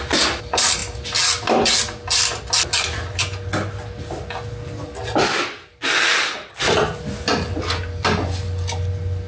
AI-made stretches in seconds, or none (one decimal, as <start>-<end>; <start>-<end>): none